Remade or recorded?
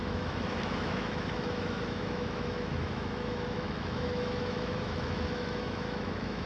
remade